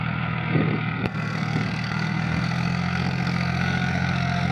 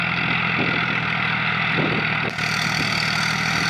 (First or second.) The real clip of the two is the second